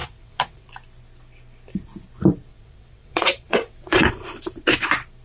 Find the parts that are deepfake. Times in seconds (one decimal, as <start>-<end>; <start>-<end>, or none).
0.0-0.7; 2.5-4.1